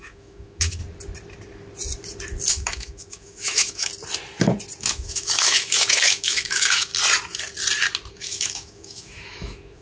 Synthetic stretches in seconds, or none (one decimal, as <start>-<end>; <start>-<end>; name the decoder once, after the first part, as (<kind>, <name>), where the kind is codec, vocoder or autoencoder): 0.0-0.8 (autoencoder, DAC-VAE); 2.5-3.9; 4.8-6.9; 8.1-9.8